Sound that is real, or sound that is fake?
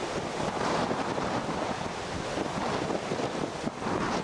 real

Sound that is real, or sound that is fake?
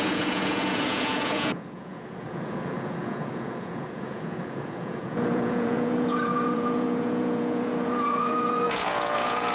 fake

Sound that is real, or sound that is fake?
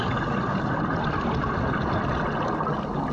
real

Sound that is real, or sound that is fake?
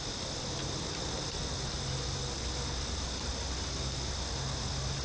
real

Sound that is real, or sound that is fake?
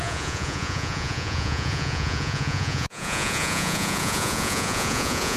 fake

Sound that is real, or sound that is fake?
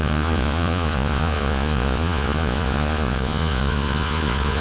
fake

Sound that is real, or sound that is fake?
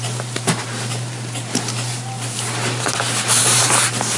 real